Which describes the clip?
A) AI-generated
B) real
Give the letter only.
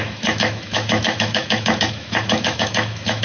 A